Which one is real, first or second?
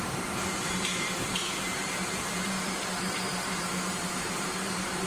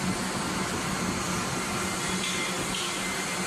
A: second